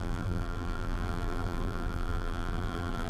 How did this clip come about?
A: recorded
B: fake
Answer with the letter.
B